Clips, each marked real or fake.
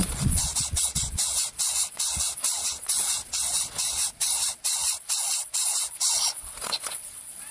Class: fake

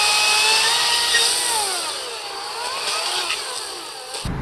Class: real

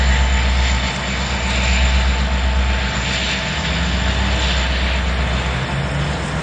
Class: real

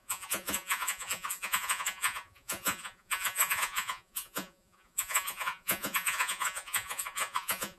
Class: fake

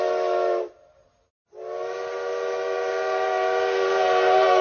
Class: real